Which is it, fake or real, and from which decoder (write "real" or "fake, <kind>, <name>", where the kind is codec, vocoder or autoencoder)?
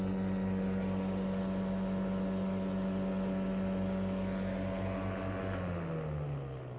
real